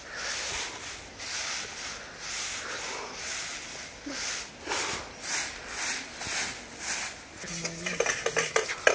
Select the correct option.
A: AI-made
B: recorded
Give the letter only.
B